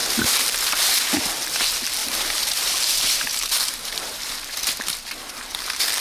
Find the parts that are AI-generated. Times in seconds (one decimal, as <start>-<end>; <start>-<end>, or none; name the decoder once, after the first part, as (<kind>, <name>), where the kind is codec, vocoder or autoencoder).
0.0-1.6 (vocoder, BigVGAN v2); 2.0-4.3